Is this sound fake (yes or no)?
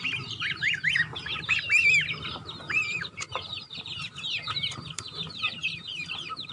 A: yes